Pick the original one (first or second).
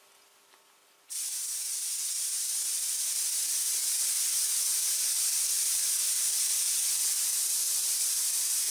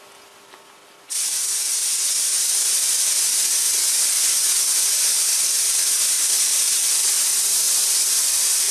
second